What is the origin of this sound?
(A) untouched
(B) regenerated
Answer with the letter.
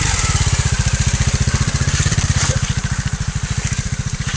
B